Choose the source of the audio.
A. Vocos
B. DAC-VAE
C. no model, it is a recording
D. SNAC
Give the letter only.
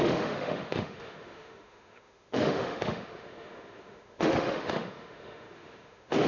B